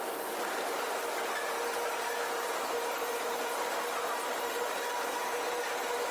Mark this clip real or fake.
real